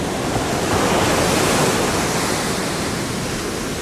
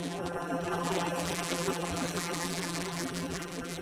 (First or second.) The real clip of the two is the first